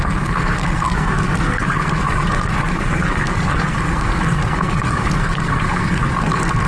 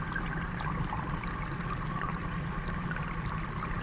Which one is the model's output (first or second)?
first